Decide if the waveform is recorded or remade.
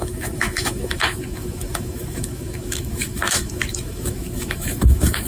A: remade